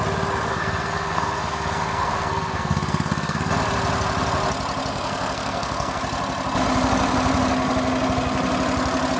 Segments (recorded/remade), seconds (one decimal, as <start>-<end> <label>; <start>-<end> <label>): 0.0-0.5 recorded; 0.5-3.5 remade; 3.5-4.9 recorded; 4.9-6.0 remade; 6.0-9.2 recorded